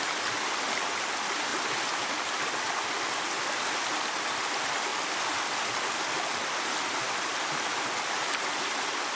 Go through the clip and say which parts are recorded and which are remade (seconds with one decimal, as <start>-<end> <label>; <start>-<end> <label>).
0.0-9.2 recorded